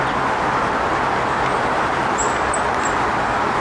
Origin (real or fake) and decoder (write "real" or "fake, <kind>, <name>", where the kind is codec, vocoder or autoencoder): real